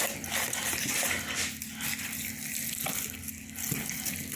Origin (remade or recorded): recorded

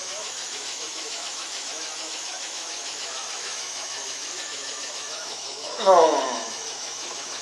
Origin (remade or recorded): remade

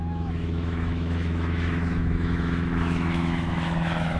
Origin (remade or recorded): remade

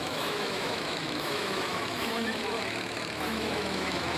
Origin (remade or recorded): remade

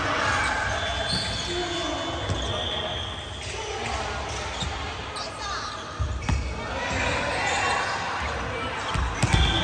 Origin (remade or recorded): recorded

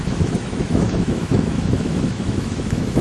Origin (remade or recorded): remade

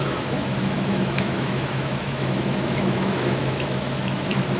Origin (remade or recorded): remade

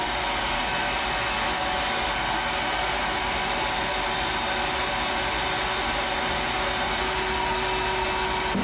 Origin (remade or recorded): recorded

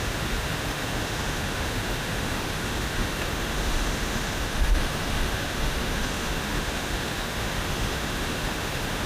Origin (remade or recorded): remade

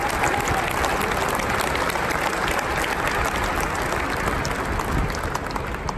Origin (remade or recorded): recorded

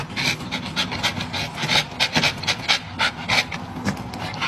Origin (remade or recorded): recorded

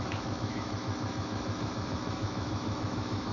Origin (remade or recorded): remade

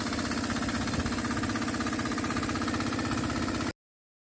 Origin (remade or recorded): recorded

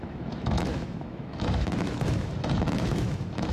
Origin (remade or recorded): remade